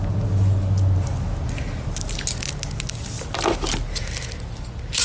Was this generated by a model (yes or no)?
no